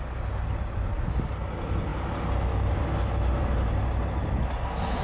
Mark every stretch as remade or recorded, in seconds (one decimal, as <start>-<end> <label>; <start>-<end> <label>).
0.0-5.0 recorded